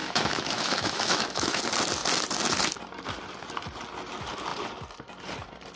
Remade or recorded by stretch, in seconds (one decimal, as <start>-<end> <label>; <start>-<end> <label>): 0.0-1.6 remade; 1.6-5.8 recorded